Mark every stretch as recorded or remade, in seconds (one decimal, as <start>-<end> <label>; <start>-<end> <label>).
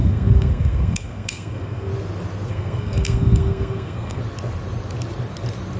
0.0-1.9 remade; 1.9-2.5 recorded; 2.5-4.2 remade; 4.2-5.8 recorded